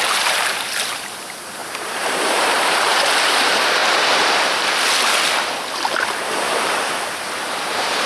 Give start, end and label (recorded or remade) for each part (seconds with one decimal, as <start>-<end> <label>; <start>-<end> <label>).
0.0-3.8 remade; 3.8-7.1 recorded; 7.1-8.1 remade